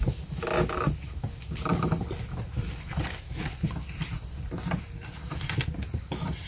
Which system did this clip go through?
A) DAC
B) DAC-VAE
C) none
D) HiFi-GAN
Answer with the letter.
C